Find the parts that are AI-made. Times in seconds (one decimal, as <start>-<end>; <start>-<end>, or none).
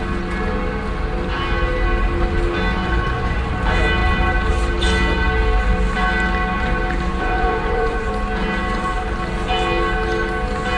2.8-3.5; 7.1-8.1